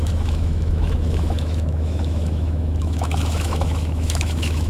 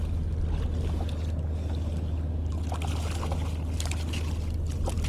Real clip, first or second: second